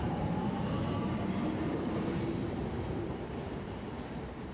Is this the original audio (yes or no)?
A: no